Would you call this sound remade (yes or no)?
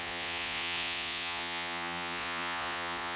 yes